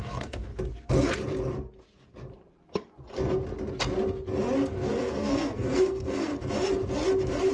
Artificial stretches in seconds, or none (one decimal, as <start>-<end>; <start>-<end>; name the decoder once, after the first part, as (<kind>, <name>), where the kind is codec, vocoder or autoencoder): 0.0-0.5 (codec, SNAC); 5.0-6.3